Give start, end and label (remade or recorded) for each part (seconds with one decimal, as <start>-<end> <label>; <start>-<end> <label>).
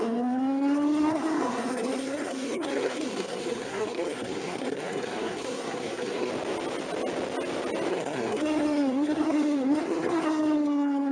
0.0-6.3 remade; 6.3-7.9 recorded; 7.9-11.1 remade